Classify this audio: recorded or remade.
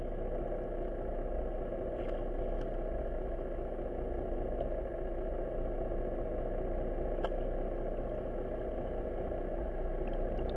recorded